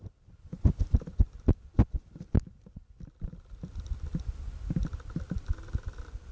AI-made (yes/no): yes